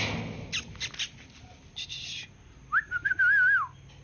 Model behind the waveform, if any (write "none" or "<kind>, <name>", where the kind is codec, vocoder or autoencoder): none